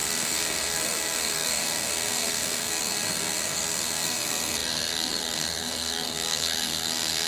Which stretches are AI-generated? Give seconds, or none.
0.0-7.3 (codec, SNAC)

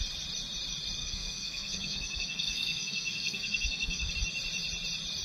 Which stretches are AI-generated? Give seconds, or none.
1.0-4.1 (codec, SNAC)

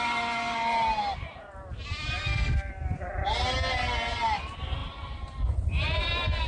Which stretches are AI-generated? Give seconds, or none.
2.2-2.7 (codec, SNAC)